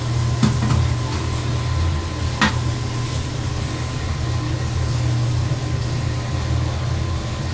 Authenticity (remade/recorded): recorded